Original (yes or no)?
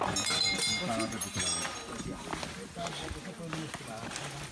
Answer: yes